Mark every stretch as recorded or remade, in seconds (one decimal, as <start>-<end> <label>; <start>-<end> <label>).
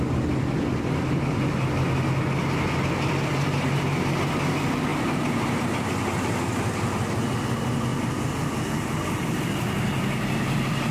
0.0-4.9 recorded; 4.9-5.6 remade; 5.6-10.9 recorded